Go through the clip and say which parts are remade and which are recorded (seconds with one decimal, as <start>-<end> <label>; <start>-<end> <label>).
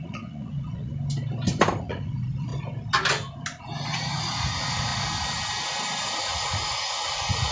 0.0-0.9 remade; 0.9-1.8 recorded; 1.8-2.5 remade; 2.5-3.6 recorded; 3.6-4.9 remade; 4.9-6.2 recorded; 6.2-7.5 remade